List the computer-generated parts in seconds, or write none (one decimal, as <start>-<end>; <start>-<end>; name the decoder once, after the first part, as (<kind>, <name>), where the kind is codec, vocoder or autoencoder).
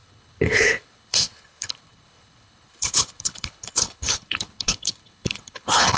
0.0-6.0 (codec, HILCodec)